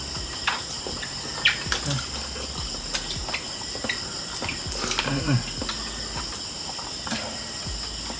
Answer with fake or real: real